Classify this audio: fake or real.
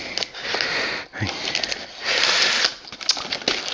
real